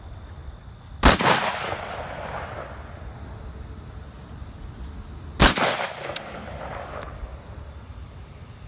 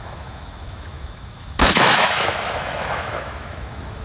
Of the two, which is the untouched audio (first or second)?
first